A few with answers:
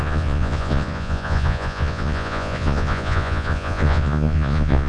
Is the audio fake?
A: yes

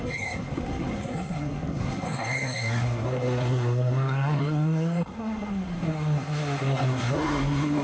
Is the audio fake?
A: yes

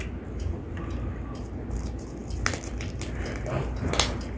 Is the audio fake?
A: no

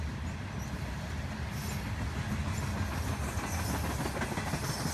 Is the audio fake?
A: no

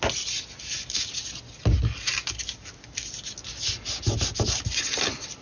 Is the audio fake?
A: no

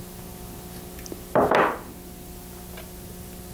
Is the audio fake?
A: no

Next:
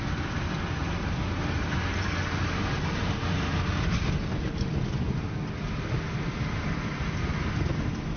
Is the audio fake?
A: no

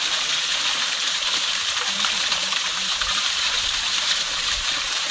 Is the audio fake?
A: yes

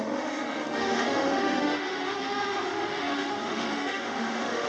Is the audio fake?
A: yes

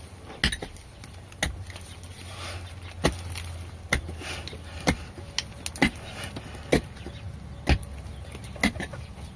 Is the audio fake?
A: no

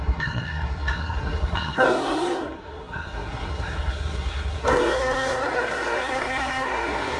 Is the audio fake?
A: yes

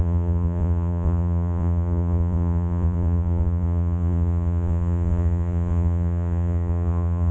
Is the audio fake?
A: yes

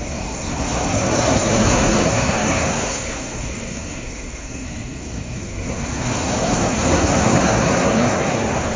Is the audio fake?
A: yes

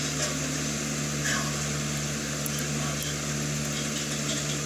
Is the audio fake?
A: no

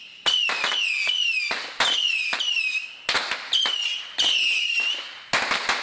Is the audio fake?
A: no